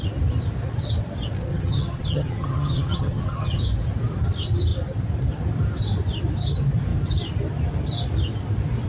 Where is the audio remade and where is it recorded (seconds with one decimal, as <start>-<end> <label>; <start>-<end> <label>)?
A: 0.0-1.5 recorded; 1.5-3.6 remade; 3.6-8.9 recorded